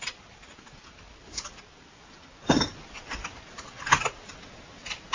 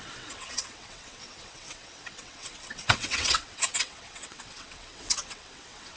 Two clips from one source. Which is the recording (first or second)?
first